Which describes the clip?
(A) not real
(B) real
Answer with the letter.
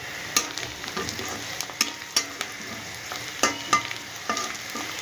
B